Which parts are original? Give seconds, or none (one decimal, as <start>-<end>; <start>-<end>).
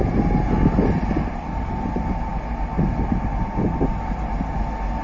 0.0-5.0